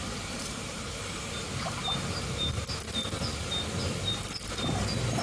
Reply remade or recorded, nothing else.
recorded